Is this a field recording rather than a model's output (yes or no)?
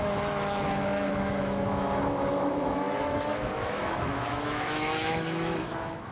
no